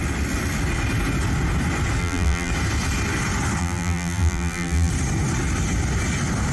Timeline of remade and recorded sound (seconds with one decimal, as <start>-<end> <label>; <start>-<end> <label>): 0.0-2.0 recorded; 2.0-2.5 remade; 2.5-3.6 recorded; 3.6-4.9 remade; 4.9-6.5 recorded